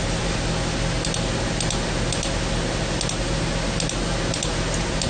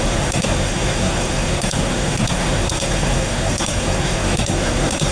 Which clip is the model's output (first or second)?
second